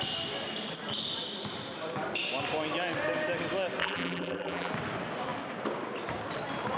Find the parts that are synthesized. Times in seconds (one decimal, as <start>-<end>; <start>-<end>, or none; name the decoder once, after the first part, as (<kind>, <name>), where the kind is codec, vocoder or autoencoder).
3.8-4.7 (vocoder, BigVGAN v2)